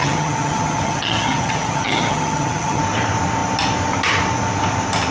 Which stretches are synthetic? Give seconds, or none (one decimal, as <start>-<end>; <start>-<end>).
0.0-2.8